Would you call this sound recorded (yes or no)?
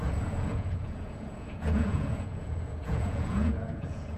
no